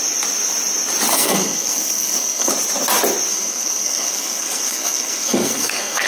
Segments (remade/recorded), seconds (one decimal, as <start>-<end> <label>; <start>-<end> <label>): 0.0-1.1 recorded; 1.1-2.5 remade; 2.5-3.3 recorded; 3.3-6.1 remade